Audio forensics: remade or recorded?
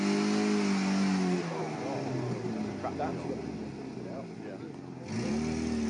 recorded